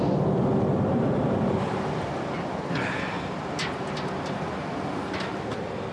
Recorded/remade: recorded